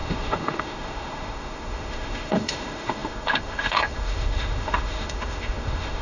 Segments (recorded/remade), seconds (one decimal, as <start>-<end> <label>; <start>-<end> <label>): 0.0-6.0 remade